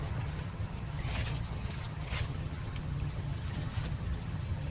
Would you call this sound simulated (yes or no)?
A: yes